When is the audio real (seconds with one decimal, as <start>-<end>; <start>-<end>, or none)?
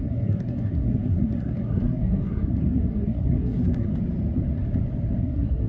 3.9-5.2